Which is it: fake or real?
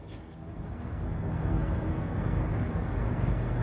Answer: fake